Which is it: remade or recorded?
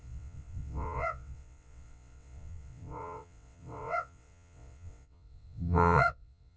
remade